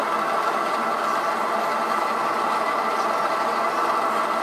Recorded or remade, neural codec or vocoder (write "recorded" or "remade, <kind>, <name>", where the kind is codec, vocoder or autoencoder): recorded